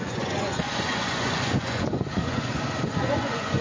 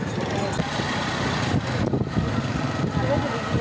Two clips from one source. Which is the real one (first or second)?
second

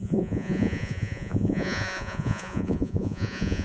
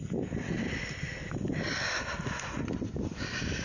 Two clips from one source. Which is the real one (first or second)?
second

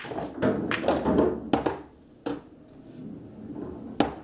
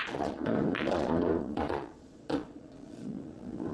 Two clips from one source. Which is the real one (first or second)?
first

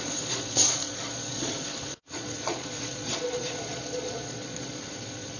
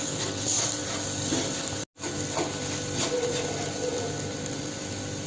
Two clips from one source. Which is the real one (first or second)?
second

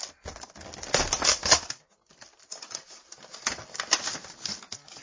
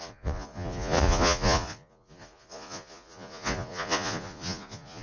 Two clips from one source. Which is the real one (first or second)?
first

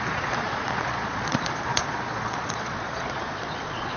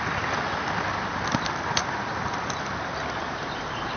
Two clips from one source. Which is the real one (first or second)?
second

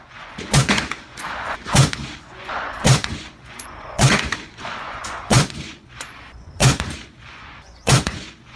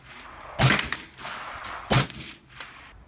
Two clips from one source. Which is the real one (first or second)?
second